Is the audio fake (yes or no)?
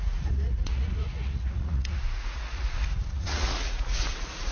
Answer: yes